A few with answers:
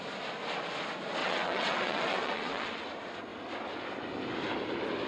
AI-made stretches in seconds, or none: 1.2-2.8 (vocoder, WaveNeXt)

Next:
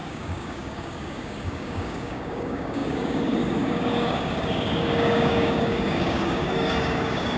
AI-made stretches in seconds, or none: 0.0-7.4 (codec, DAC)

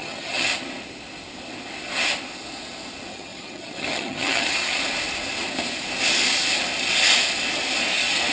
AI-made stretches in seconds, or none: 0.0-0.5 (vocoder, HiFi-GAN); 3.1-4.8

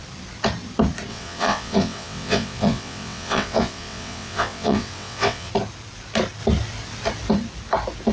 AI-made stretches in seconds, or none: 1.1-5.5 (vocoder, WaveNeXt)

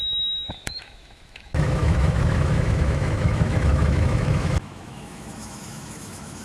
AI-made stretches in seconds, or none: 0.0-6.4 (autoencoder, DAC-VAE)

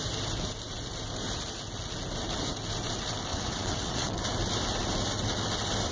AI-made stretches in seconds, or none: 3.3-4.1 (vocoder, WaveNeXt)

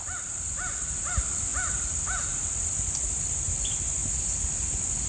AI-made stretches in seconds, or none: none

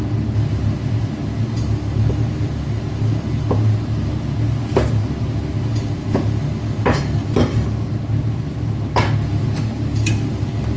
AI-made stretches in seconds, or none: none